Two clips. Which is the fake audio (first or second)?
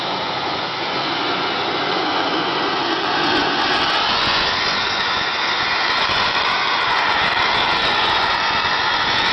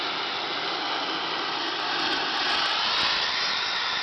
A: first